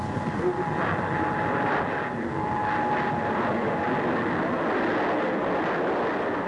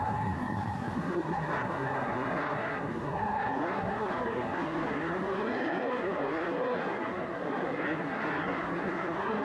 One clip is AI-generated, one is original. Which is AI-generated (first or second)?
second